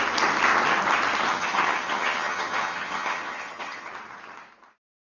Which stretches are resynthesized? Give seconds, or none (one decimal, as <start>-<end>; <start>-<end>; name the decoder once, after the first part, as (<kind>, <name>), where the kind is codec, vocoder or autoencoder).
1.3-3.9 (vocoder, HiFi-GAN)

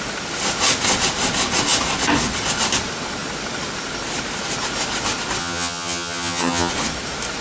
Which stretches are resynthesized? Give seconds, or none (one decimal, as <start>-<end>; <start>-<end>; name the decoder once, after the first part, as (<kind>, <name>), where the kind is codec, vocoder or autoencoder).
5.4-6.7 (vocoder, HiFi-GAN)

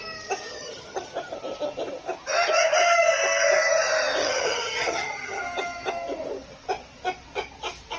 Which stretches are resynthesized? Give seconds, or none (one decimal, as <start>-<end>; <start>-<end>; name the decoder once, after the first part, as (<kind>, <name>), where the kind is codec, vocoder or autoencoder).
0.5-1.1 (vocoder, HiFi-GAN); 4.2-5.4

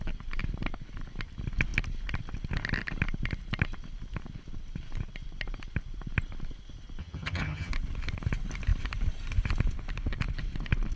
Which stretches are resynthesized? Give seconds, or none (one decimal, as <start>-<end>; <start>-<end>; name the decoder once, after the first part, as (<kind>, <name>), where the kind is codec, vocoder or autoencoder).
7.0-7.7 (vocoder, HiFi-GAN)

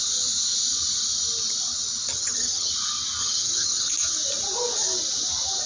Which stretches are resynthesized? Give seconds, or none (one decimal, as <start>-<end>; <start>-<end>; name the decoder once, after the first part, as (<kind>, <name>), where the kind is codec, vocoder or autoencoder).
2.1-2.7 (vocoder, HiFi-GAN); 3.2-3.9